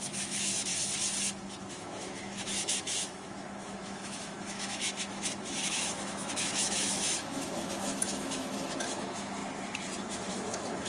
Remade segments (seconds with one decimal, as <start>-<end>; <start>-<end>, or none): 0.0-0.7; 1.7-9.4; 10.3-10.9